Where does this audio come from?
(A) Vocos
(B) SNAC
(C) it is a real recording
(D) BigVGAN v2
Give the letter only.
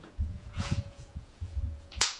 A